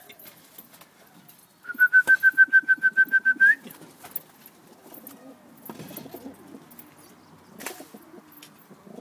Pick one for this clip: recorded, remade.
recorded